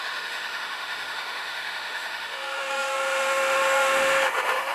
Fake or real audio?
fake